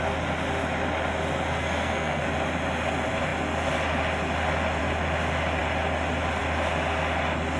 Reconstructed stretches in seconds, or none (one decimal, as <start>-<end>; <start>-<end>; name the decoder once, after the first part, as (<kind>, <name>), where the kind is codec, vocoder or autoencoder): 1.5-2.3 (codec, SNAC)